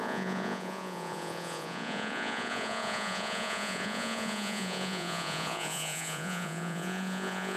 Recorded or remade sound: remade